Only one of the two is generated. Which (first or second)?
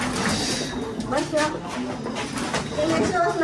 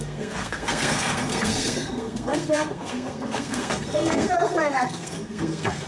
second